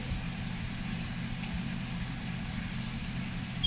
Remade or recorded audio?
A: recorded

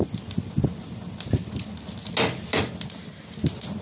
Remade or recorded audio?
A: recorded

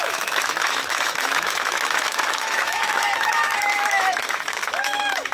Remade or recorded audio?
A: remade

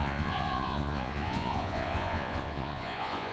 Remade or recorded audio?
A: remade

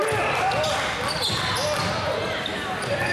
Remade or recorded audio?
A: recorded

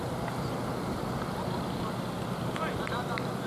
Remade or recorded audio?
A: recorded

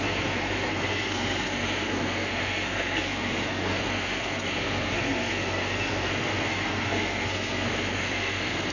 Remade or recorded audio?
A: remade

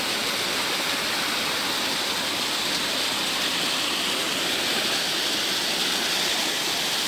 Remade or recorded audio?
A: recorded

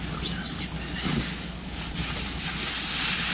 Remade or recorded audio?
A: recorded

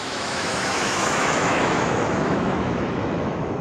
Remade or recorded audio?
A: remade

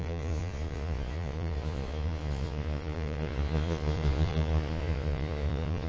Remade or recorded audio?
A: remade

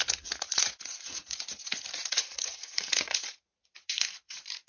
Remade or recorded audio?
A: remade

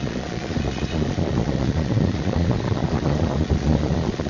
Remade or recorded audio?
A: remade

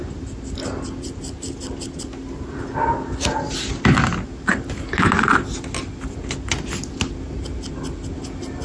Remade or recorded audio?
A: recorded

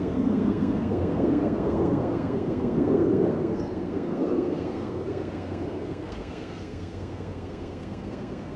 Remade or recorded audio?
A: remade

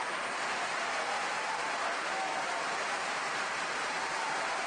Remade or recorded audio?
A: remade